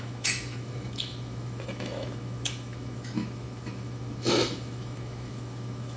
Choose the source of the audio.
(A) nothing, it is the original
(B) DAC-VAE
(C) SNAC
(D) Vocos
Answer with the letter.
B